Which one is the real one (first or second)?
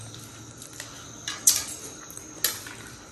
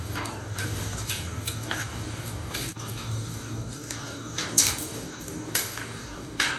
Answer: first